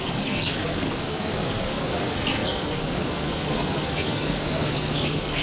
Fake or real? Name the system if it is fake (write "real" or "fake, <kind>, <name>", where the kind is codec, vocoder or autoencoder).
fake, codec, SNAC